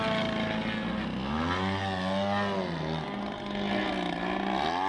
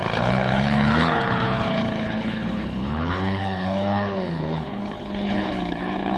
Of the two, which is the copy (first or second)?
second